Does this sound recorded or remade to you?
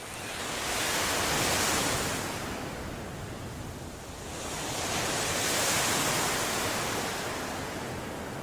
recorded